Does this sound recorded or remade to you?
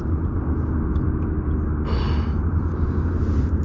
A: recorded